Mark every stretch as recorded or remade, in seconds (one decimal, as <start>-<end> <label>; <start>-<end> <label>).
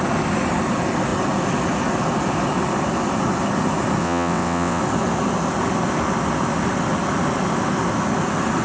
0.0-4.0 recorded; 4.0-4.8 remade; 4.8-8.6 recorded